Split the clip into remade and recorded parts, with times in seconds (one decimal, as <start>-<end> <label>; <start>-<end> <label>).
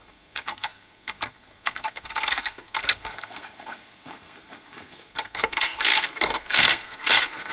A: 0.0-7.5 remade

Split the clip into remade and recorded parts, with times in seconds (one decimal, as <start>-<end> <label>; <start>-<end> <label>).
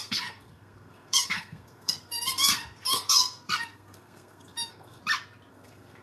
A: 0.0-5.0 remade; 5.0-5.5 recorded; 5.5-6.0 remade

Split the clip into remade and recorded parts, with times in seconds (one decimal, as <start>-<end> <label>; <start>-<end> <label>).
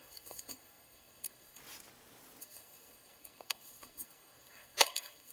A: 0.0-1.6 remade; 1.6-2.4 recorded; 2.4-5.3 remade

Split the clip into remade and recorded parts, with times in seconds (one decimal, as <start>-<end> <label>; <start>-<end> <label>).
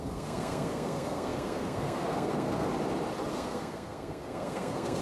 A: 0.0-2.7 remade; 2.7-3.3 recorded; 3.3-5.0 remade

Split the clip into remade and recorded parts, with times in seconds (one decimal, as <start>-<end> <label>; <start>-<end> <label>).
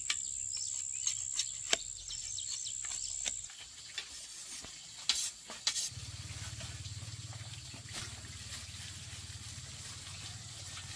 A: 0.0-11.0 recorded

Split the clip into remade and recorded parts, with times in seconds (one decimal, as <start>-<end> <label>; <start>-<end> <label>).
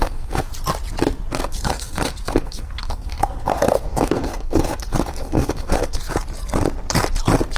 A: 0.0-0.5 remade; 0.5-1.4 recorded; 1.4-6.0 remade; 6.0-7.6 recorded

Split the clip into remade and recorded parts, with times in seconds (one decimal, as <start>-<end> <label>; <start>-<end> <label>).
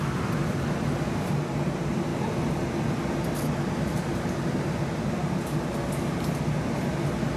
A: 0.0-7.4 recorded